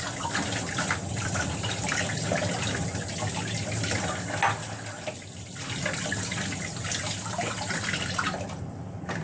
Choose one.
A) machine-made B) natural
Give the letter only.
B